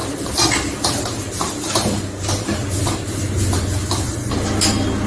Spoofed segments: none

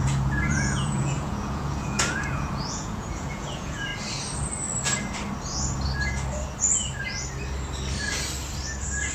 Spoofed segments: 0.0-3.9

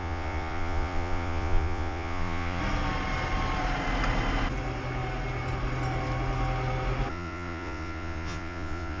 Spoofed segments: 0.0-2.6; 7.1-9.0

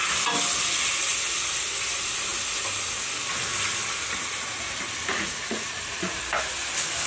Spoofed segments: 5.1-6.2

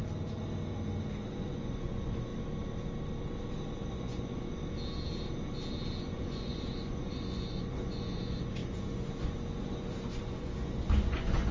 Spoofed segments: 1.3-2.3; 3.9-4.6; 6.0-11.5